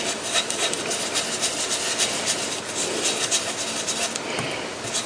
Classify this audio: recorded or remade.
recorded